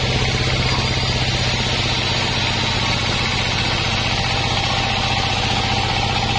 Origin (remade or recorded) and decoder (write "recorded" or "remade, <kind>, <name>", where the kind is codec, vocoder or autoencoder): recorded